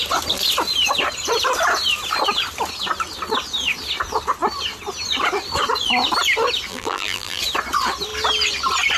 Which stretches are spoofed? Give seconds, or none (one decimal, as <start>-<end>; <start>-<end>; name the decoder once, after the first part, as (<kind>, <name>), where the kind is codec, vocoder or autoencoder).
6.7-7.4 (vocoder, BigVGAN v2)

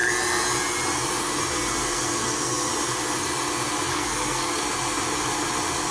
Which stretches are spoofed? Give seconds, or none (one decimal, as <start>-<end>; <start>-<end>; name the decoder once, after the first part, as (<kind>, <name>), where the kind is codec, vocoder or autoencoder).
1.8-2.7 (codec, SNAC); 3.9-4.6

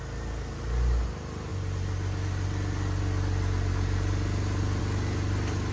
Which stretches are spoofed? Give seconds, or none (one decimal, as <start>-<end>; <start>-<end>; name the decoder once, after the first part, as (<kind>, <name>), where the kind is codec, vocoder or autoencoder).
none

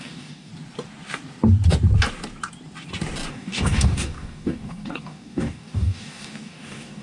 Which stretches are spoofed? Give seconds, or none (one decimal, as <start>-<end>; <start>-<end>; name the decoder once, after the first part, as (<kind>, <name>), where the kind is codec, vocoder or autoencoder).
0.0-0.5 (codec, DAC); 3.3-7.0

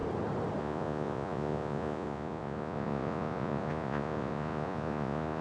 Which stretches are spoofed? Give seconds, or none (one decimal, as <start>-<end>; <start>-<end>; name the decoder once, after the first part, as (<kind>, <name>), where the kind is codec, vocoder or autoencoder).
0.6-5.4 (vocoder, Vocos)

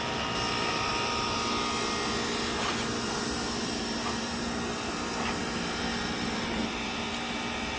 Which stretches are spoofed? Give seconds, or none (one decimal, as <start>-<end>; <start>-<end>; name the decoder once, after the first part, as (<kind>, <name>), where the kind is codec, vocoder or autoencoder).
0.0-0.9 (vocoder, BigVGAN v2); 3.6-4.3; 5.4-5.9; 6.5-7.8

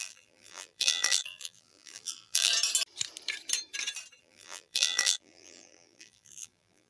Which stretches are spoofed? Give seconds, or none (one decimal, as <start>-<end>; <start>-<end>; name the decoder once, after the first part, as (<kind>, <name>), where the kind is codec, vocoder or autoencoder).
0.0-2.5 (vocoder, BigVGAN v2); 4.2-6.9